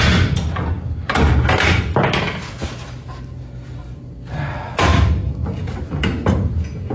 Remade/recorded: recorded